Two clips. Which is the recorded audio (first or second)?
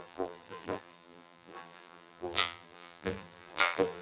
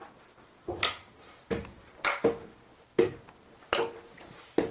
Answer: second